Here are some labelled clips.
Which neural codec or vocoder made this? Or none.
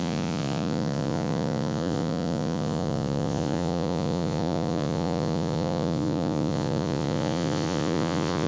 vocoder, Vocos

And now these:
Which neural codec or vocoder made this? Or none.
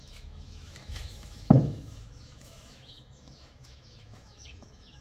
autoencoder, DAC-VAE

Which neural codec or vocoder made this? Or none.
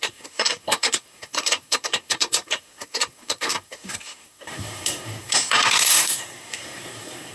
codec, SNAC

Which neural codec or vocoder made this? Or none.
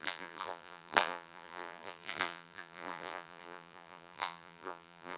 vocoder, BigVGAN v2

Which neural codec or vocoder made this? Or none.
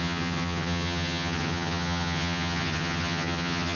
vocoder, HiFi-GAN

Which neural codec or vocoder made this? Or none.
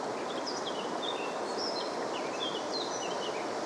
none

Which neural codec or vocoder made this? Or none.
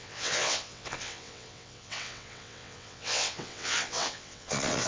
vocoder, WaveNeXt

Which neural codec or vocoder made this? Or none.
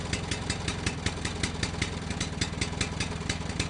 none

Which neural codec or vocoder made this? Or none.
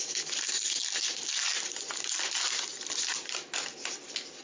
none